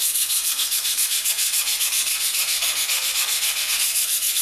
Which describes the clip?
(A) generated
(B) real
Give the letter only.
A